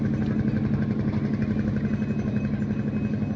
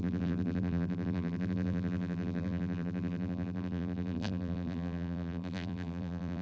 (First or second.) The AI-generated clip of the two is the second